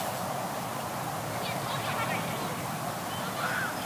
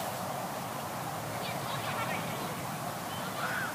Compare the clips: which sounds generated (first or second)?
second